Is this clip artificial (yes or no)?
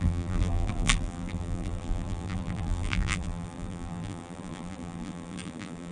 yes